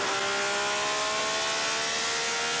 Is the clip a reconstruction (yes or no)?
no